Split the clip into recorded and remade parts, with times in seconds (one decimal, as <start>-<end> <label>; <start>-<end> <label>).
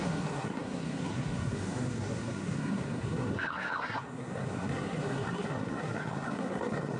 0.0-7.0 remade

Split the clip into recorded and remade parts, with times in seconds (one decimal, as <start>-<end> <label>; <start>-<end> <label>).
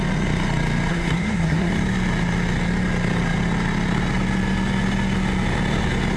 0.0-0.9 recorded; 0.9-1.7 remade; 1.7-6.2 recorded